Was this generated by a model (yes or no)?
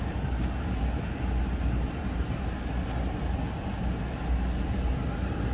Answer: no